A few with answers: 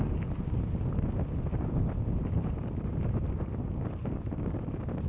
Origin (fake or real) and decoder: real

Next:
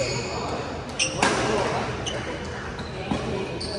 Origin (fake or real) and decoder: real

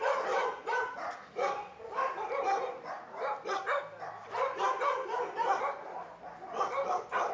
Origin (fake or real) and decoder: real